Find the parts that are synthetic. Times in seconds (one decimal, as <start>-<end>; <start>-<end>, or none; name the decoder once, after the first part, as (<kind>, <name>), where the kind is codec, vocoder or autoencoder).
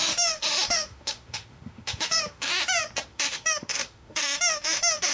0.0-2.5 (autoencoder, DAC-VAE); 3.1-5.1